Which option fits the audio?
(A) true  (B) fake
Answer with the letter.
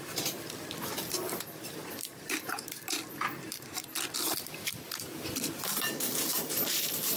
B